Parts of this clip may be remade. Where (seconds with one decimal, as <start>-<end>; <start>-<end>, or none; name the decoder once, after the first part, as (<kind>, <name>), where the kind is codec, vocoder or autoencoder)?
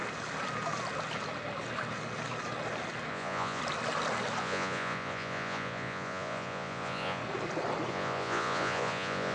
3.1-3.6 (vocoder, Vocos); 4.4-7.2; 7.9-9.3